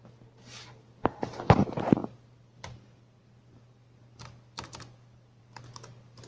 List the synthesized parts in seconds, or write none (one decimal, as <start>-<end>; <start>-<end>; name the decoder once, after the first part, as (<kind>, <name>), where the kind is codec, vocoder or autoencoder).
none

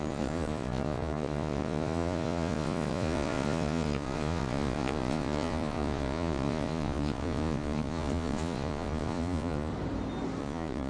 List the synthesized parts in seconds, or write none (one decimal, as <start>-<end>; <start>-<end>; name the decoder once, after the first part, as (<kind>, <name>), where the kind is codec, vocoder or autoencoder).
0.0-9.7 (vocoder, Vocos); 10.4-10.9